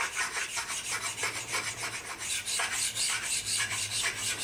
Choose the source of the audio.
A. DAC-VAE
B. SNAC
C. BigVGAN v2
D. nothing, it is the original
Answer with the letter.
C